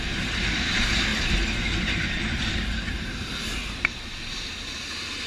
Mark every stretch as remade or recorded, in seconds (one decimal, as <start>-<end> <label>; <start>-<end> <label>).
0.0-5.3 remade